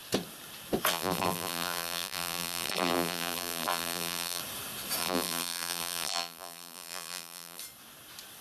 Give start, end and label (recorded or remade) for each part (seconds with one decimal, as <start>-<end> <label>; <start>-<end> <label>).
0.0-0.9 recorded; 0.9-4.4 remade; 4.4-5.0 recorded; 5.0-7.6 remade; 7.6-8.4 recorded